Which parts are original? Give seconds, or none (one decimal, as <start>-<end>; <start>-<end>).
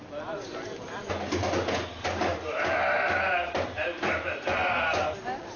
0.0-2.3; 4.7-5.6